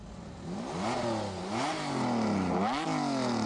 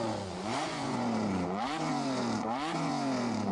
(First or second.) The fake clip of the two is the second